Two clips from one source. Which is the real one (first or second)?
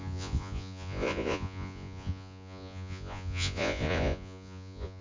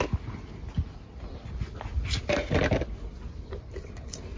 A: second